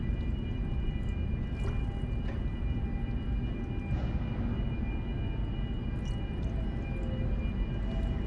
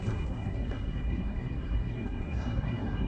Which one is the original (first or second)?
first